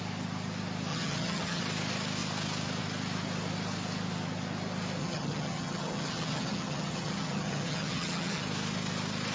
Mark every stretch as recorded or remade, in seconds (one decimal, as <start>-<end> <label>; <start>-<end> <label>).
0.0-0.9 recorded; 0.9-1.6 remade; 1.6-5.0 recorded; 5.0-8.4 remade; 8.4-9.3 recorded